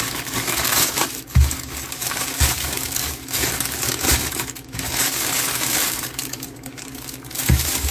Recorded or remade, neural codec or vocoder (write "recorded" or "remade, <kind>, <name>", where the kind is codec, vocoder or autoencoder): remade, codec, DAC